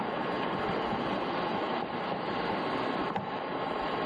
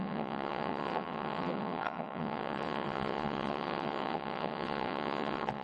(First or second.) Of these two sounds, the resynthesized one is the second